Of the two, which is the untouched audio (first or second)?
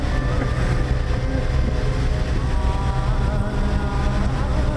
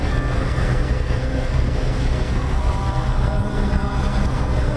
first